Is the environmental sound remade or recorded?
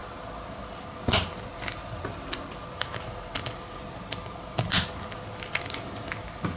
recorded